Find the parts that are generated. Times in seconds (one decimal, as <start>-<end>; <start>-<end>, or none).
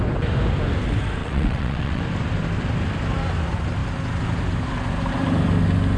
1.2-2.0